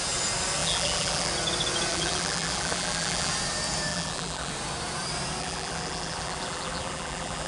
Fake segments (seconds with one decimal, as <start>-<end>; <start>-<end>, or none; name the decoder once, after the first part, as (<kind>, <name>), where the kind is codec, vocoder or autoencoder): 0.6-1.3 (vocoder, BigVGAN v2); 1.9-3.3; 3.9-4.5; 5.4-7.5